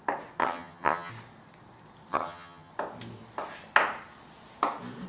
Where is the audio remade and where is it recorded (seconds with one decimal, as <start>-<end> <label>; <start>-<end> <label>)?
0.0-0.4 recorded; 0.4-1.1 remade; 1.1-2.1 recorded; 2.1-2.7 remade; 2.7-5.1 recorded